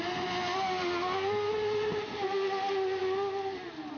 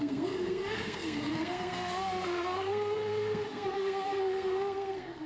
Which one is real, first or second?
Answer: first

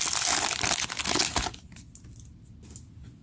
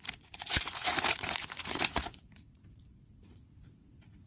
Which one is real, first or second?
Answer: first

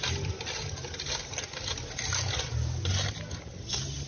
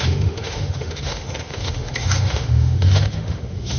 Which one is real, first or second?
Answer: first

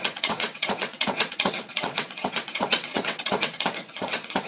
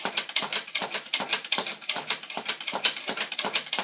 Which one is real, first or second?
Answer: second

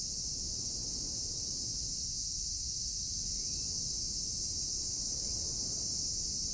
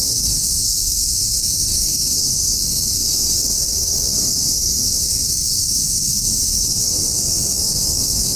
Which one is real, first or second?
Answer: first